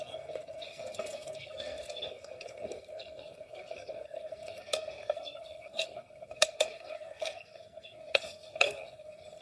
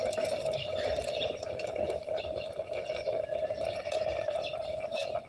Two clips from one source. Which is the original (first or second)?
second